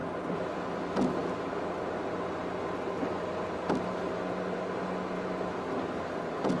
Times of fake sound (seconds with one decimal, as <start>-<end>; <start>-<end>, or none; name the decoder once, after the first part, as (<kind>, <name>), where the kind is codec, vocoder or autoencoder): none